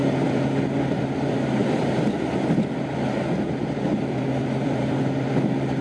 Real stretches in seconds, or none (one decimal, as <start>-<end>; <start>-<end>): none